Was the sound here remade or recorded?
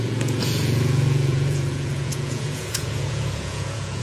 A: remade